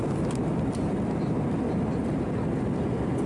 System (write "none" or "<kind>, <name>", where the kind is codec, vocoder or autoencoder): none